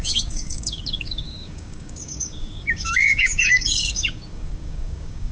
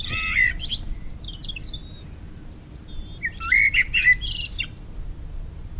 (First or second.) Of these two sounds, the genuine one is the second